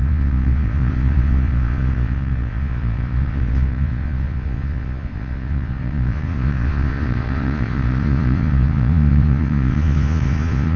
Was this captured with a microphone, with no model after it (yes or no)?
no